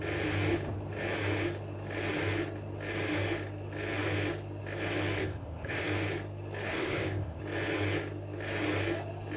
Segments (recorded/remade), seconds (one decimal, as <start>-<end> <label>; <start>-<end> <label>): 0.0-5.2 recorded; 5.2-5.8 remade; 5.8-6.7 recorded; 6.7-7.4 remade; 7.4-9.4 recorded

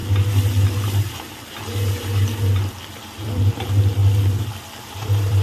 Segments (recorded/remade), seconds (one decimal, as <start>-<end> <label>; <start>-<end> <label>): 0.0-3.2 recorded; 3.2-4.0 remade; 4.0-4.8 recorded; 4.8-5.4 remade

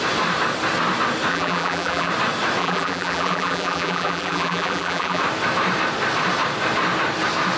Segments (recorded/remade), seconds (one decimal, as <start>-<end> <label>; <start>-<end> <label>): 0.0-1.3 recorded; 1.3-2.1 remade; 2.1-2.6 recorded; 2.6-5.2 remade; 5.2-7.6 recorded

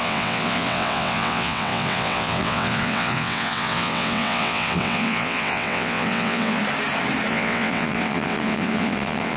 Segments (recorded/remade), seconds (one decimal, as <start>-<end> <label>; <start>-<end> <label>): 0.0-6.6 remade; 6.6-7.3 recorded; 7.3-9.4 remade

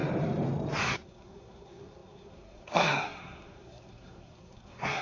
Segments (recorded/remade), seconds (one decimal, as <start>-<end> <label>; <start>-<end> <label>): 0.0-0.8 recorded; 0.8-5.0 remade

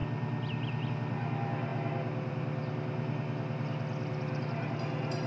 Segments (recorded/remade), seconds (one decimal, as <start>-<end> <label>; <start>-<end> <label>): 0.0-0.9 recorded; 0.9-5.3 remade

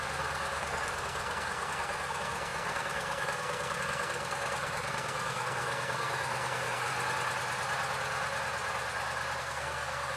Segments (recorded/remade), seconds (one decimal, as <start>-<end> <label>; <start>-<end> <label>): 0.0-6.9 remade; 6.9-9.4 recorded; 9.4-10.2 remade